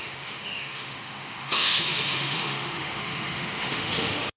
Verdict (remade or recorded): remade